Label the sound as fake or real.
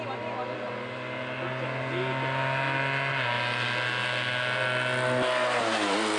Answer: real